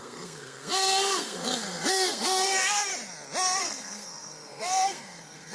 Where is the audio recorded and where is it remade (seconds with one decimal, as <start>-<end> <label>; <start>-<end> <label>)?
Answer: 0.0-2.9 remade; 2.9-3.6 recorded; 3.6-5.5 remade